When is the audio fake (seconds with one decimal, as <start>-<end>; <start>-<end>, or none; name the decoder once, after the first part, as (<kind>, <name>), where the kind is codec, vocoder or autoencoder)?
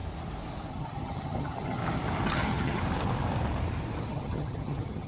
0.7-1.8 (vocoder, HiFi-GAN); 2.3-2.8; 4.1-5.1